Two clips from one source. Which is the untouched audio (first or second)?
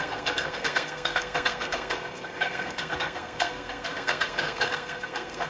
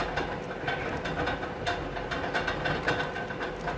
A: second